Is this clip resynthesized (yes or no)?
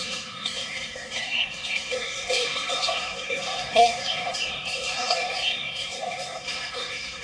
yes